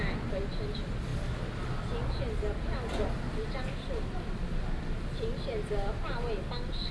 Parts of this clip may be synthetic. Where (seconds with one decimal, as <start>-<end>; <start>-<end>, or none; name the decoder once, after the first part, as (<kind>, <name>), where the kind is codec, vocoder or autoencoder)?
none